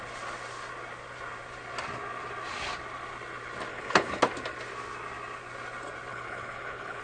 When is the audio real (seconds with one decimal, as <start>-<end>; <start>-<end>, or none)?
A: 0.0-3.7; 4.2-6.1